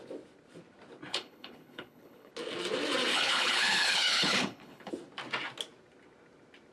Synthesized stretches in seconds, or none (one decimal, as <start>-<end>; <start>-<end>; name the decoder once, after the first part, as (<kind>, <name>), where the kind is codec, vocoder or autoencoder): 1.1-2.3 (codec, HILCodec); 3.1-4.9